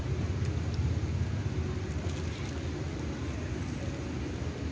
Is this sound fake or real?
real